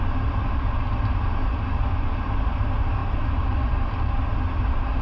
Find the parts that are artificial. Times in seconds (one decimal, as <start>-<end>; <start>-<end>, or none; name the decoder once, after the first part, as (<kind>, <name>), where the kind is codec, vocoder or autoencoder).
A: none